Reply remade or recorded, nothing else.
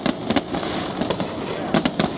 recorded